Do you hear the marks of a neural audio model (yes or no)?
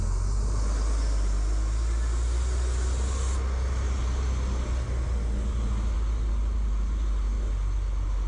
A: no